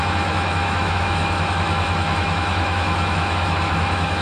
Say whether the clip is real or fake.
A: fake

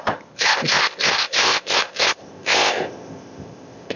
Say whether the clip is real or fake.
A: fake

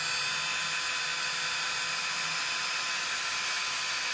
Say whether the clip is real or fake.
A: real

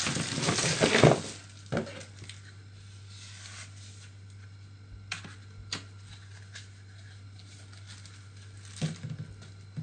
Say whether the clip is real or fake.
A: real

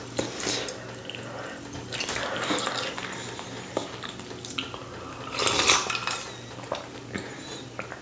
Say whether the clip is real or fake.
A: real